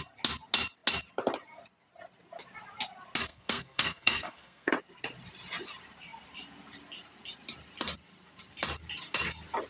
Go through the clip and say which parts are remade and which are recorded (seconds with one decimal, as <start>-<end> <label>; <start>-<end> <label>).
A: 0.0-3.3 recorded; 3.3-4.7 remade; 4.7-9.7 recorded